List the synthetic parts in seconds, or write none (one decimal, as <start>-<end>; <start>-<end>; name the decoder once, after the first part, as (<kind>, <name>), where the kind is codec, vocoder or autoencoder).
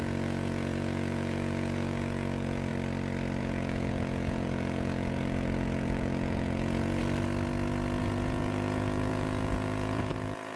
0.0-2.7 (vocoder, Vocos); 3.4-7.0; 8.0-10.6